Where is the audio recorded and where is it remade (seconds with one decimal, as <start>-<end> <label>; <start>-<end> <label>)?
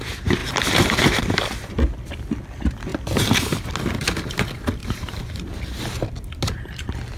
0.0-0.4 recorded; 0.4-1.2 remade; 1.2-2.9 recorded; 2.9-3.7 remade; 3.7-4.8 recorded; 4.8-5.4 remade; 5.4-7.2 recorded